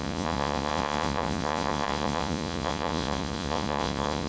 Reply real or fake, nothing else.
fake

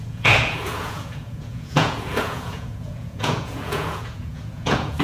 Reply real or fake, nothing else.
fake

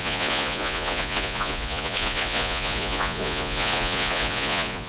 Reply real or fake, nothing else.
fake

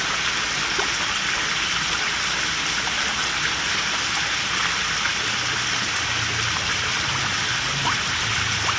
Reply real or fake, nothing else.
real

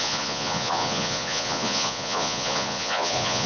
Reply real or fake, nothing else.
fake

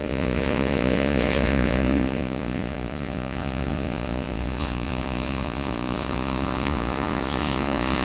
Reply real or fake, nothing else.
fake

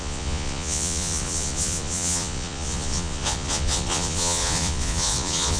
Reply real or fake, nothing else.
fake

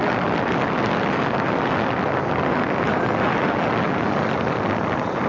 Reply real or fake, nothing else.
real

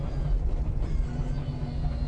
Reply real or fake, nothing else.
real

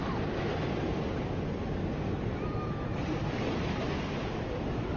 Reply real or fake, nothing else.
real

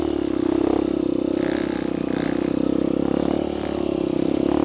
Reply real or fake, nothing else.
real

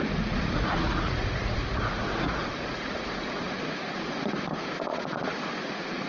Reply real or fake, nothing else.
fake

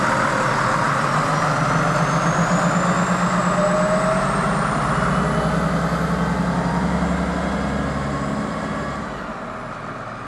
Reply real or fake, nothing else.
real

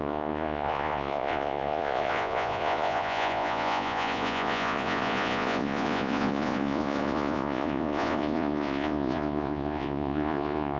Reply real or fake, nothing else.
fake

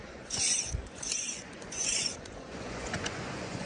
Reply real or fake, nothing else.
fake